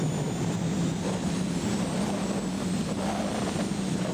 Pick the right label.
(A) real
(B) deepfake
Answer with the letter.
A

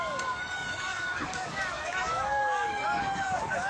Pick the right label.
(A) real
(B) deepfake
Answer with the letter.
B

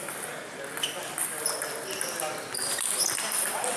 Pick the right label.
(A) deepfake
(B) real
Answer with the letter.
B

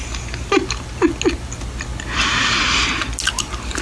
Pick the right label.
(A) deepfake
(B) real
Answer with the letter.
B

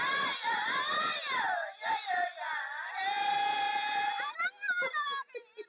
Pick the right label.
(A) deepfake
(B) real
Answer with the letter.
B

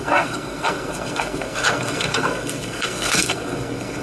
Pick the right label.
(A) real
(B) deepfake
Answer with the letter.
B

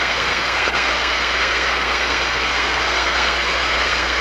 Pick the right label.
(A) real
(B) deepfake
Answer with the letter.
B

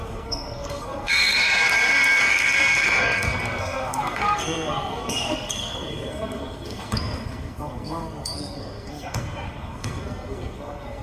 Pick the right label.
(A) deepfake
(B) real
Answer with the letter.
A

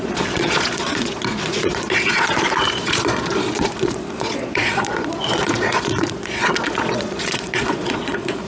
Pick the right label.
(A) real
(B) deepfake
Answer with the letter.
B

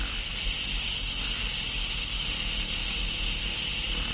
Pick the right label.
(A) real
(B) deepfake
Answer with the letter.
A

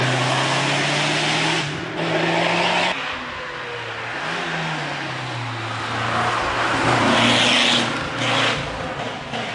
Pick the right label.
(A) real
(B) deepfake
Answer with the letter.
A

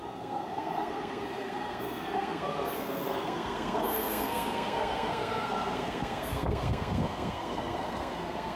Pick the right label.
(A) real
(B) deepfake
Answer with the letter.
B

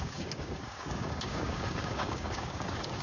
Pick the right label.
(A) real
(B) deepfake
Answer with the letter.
B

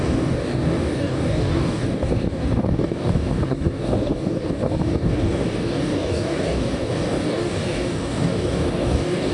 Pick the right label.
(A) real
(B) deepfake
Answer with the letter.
B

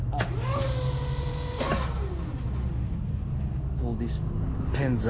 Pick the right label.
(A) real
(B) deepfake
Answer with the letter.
A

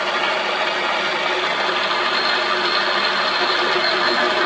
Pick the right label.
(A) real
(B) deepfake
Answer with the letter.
A